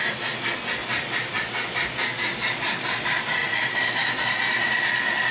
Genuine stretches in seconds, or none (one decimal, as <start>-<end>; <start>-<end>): 0.0-0.8; 1.4-3.4